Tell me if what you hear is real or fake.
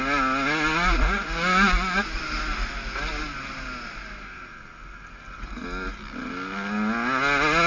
real